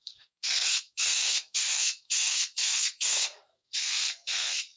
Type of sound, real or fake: fake